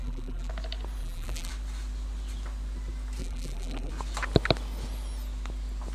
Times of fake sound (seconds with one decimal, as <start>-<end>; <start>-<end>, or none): 0.0-0.5; 1.0-1.5; 3.2-3.9